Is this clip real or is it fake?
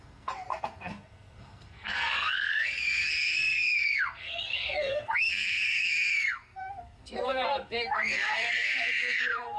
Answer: fake